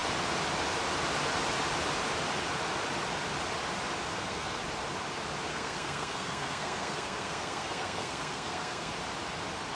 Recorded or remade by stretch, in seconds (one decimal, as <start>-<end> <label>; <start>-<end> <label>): 0.0-4.1 recorded; 4.1-4.6 remade; 4.6-5.5 recorded; 5.5-8.9 remade; 8.9-9.7 recorded